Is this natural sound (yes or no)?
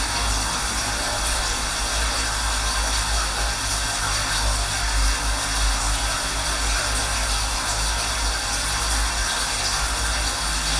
yes